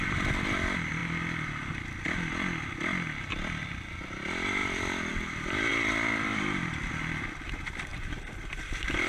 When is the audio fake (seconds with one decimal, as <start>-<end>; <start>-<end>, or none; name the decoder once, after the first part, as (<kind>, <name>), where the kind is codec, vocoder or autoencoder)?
4.6-5.1 (vocoder, BigVGAN v2); 5.7-6.9; 7.9-9.1